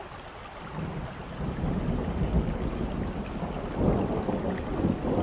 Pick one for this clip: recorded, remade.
recorded